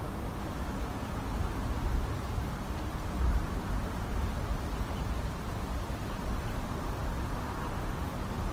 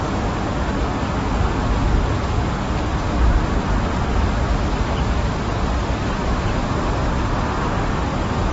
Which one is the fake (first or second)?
first